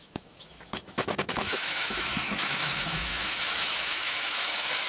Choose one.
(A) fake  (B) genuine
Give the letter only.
A